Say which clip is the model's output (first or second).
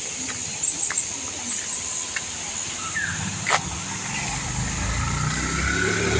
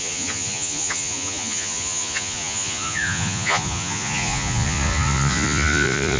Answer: second